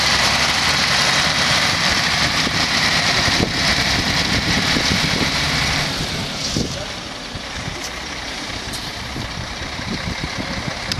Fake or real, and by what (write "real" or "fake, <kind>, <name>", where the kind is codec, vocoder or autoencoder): fake, vocoder, BigVGAN v2